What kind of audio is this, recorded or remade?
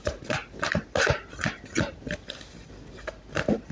recorded